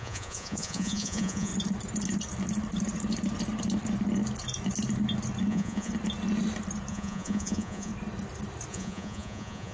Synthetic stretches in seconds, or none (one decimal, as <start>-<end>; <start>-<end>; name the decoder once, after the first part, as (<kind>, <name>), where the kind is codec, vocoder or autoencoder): 0.0-1.5 (vocoder, Vocos); 5.5-5.9; 6.9-7.9; 8.7-9.7